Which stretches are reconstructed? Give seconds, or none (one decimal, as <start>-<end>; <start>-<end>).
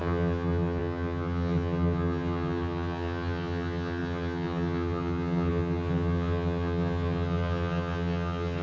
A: 0.0-8.6